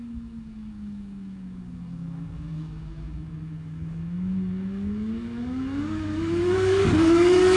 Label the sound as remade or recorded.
remade